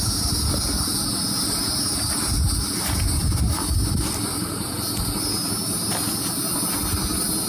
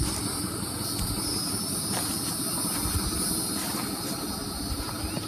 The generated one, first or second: second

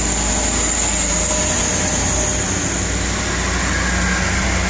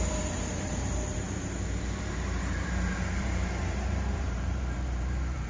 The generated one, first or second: second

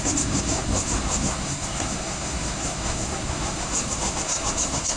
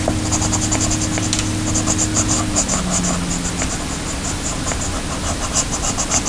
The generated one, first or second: first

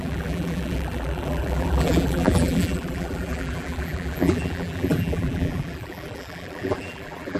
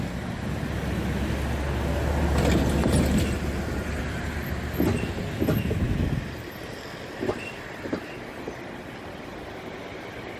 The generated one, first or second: first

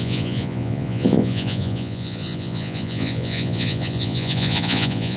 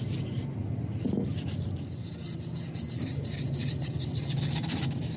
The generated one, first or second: first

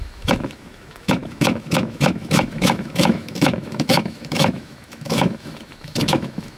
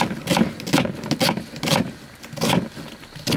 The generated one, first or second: first